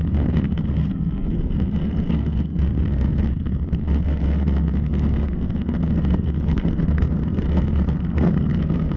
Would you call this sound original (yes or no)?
no